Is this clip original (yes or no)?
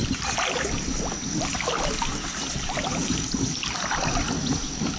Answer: yes